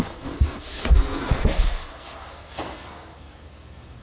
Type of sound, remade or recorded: remade